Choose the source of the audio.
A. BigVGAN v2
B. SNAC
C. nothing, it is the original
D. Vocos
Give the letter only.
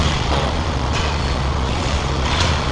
D